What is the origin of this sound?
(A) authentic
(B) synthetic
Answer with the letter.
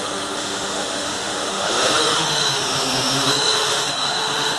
B